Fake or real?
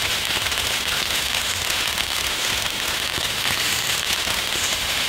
fake